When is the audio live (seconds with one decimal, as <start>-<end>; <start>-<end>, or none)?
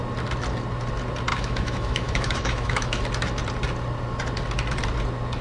0.0-1.3; 3.0-5.4